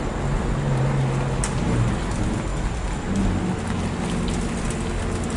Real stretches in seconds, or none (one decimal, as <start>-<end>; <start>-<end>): 0.0-5.4